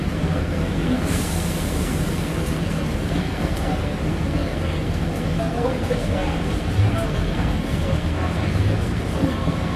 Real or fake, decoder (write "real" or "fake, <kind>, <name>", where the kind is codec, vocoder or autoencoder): fake, codec, SNAC